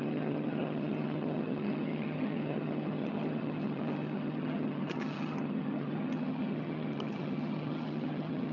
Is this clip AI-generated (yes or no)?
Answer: yes